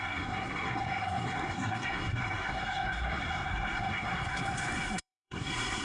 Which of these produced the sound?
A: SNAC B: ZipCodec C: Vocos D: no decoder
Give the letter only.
A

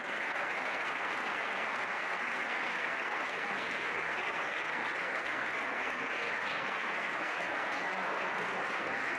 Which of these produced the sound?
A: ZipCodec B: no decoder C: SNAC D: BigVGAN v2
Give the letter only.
C